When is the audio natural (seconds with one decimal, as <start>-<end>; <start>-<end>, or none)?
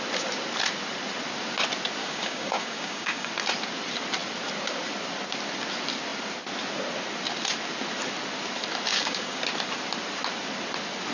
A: 0.0-2.0; 3.3-8.9; 9.4-11.1